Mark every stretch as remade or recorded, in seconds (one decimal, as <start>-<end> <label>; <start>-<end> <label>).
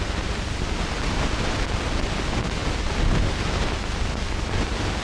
0.0-5.0 recorded